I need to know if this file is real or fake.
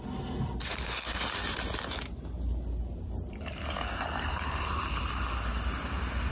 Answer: real